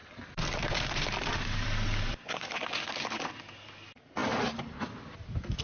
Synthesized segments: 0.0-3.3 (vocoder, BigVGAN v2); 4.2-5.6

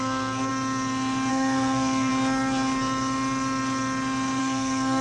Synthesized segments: 0.0-0.5 (codec, SNAC); 1.3-2.1; 4.4-5.0

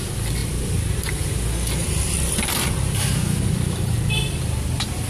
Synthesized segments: 0.0-0.4 (vocoder, BigVGAN v2); 3.5-5.1

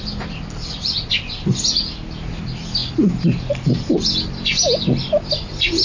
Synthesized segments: none

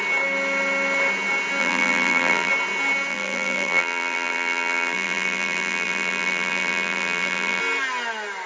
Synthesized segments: 1.6-2.5 (vocoder, BigVGAN v2); 3.1-7.6